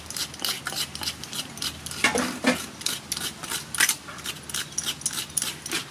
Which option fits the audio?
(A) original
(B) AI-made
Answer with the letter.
A